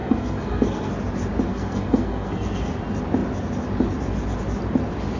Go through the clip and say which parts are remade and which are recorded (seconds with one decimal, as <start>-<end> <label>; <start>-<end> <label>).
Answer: 0.0-0.9 remade; 0.9-1.5 recorded; 1.5-2.8 remade; 2.8-5.2 recorded